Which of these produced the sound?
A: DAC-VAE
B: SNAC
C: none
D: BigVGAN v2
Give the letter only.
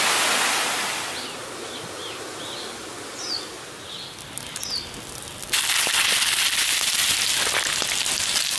C